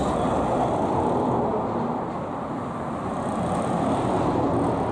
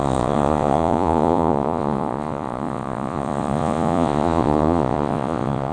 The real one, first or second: first